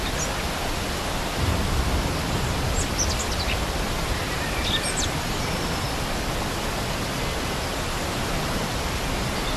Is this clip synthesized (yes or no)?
no